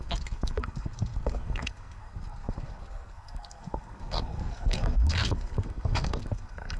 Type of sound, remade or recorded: remade